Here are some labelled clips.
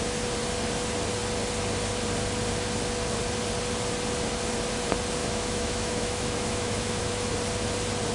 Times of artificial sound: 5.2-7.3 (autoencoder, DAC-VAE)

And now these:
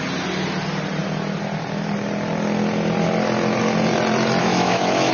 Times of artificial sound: 4.4-5.1 (autoencoder, DAC-VAE)

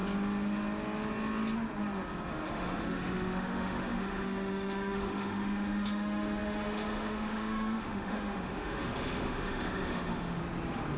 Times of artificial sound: 2.3-10.4 (autoencoder, DAC-VAE)

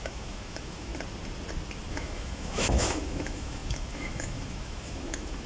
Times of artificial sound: 0.0-0.9 (autoencoder, DAC-VAE); 1.9-5.5

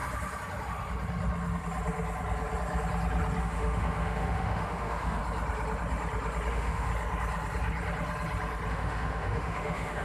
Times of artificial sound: 3.4-5.2 (autoencoder, DAC-VAE); 6.5-6.9; 8.7-10.0